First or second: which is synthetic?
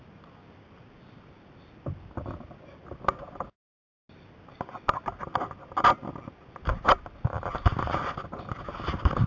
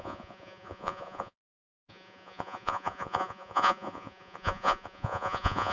second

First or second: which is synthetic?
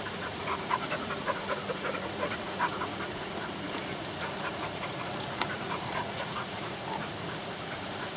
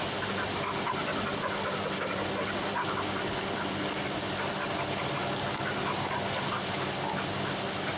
first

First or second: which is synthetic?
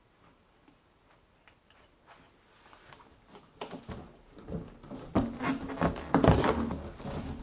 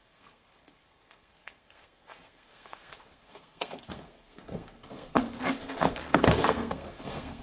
second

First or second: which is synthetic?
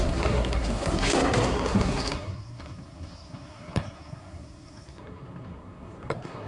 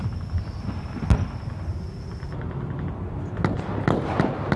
first